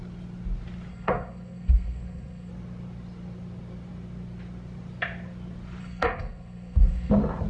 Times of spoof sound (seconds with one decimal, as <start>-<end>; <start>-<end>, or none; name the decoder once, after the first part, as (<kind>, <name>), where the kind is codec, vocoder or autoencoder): 0.9-2.5 (codec, SNAC); 5.8-7.1